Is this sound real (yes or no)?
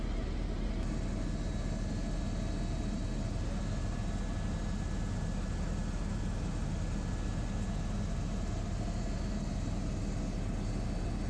yes